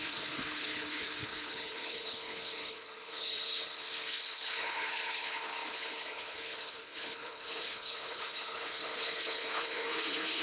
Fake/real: fake